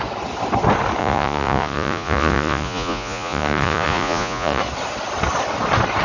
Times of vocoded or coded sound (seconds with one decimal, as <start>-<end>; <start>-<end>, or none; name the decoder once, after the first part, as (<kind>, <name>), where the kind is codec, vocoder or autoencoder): 1.0-4.6 (vocoder, Vocos)